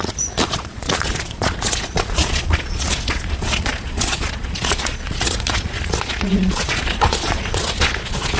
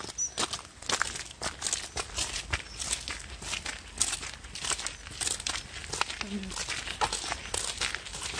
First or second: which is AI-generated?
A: first